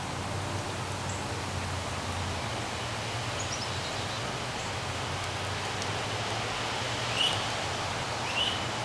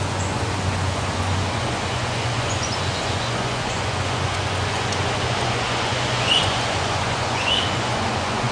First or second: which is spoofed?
second